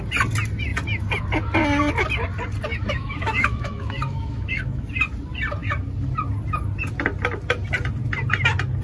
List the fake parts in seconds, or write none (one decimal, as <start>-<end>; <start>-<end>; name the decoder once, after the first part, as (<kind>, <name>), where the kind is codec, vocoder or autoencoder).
2.7-4.9 (autoencoder, DAC-VAE)